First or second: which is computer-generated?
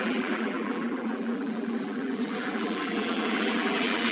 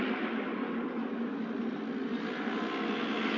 first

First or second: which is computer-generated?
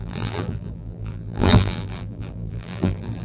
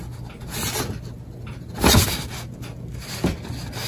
first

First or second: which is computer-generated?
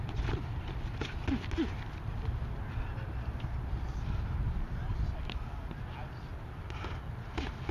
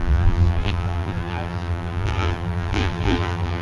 second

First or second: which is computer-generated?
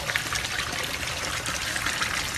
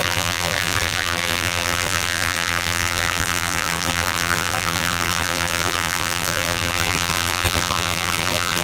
second